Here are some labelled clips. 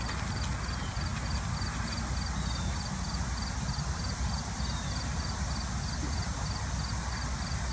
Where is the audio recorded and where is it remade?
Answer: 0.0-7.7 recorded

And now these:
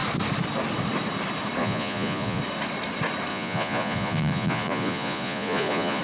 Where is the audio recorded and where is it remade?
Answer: 0.0-1.6 recorded; 1.6-2.4 remade; 2.4-3.3 recorded; 3.3-6.0 remade

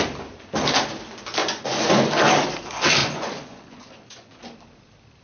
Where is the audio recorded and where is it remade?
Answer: 0.0-1.4 recorded; 1.4-2.1 remade; 2.1-3.0 recorded; 3.0-4.4 remade; 4.4-5.2 recorded